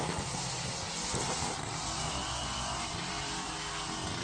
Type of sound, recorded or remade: recorded